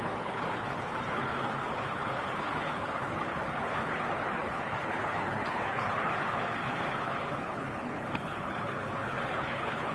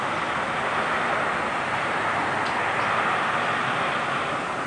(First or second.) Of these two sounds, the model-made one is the first